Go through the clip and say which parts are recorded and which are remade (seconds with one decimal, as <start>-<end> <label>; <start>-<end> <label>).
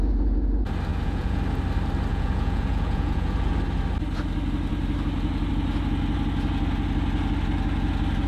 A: 0.0-0.9 recorded; 0.9-1.4 remade; 1.4-2.1 recorded; 2.1-3.5 remade; 3.5-8.3 recorded